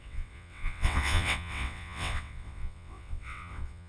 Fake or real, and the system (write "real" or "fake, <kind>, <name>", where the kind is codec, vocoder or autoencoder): fake, vocoder, WaveNeXt